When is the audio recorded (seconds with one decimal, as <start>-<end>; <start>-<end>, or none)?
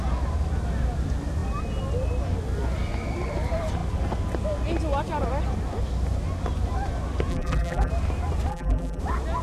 0.0-7.3; 7.9-8.5; 9.0-9.4